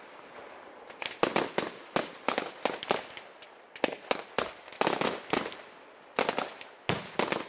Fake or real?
real